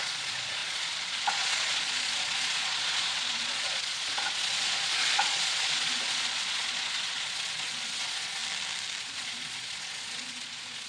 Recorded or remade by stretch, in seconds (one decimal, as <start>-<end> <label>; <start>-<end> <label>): 0.0-8.4 remade; 8.4-9.0 recorded; 9.0-10.9 remade

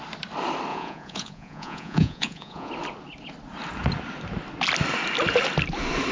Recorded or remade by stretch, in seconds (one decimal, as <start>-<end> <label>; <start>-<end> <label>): 0.0-0.7 recorded; 0.7-2.7 remade; 2.7-6.1 recorded

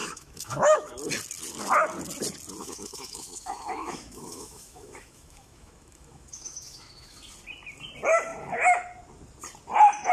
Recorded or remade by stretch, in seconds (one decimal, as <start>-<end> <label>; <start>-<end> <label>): 0.0-0.9 remade; 0.9-2.6 recorded; 2.6-7.2 remade; 7.2-10.1 recorded

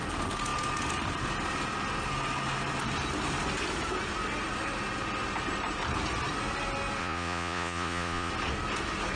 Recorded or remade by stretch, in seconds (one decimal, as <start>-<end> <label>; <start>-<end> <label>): 0.0-7.0 recorded; 7.0-8.3 remade; 8.3-9.2 recorded

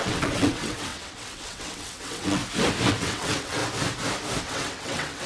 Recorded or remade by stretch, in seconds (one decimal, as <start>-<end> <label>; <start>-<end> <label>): 0.0-2.4 remade; 2.4-2.9 recorded; 2.9-3.6 remade; 3.6-4.4 recorded; 4.4-5.3 remade

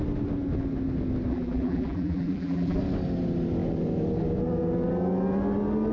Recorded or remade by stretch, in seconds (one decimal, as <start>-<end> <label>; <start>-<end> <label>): 0.0-1.3 recorded; 1.3-2.8 remade; 2.8-5.9 recorded

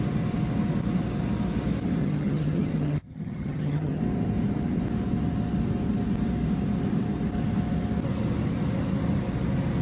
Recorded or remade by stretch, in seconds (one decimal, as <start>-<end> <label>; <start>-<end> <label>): 0.0-2.0 recorded; 2.0-4.0 remade; 4.0-9.8 recorded